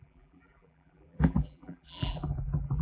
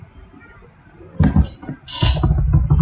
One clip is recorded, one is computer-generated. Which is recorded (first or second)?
second